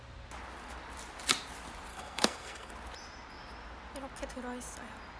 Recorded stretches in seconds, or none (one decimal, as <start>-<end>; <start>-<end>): 0.0-1.9; 2.7-5.2